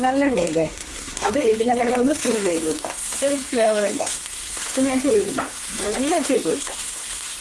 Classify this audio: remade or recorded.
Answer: remade